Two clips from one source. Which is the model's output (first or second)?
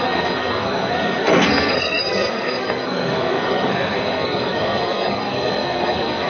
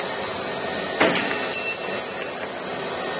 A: first